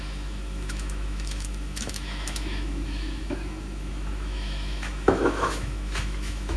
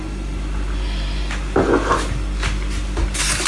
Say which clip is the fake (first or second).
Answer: first